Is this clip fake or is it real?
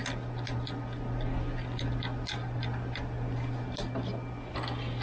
real